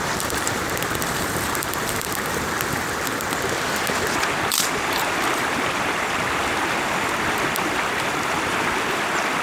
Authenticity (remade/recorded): remade